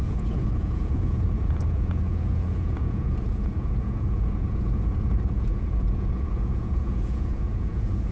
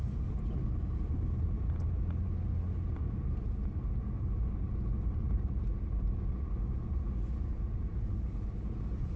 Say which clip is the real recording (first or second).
second